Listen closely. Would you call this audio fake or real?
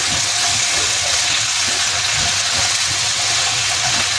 fake